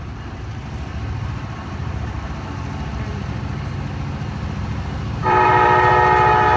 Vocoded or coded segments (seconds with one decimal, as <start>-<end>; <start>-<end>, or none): 0.6-2.0; 5.2-5.9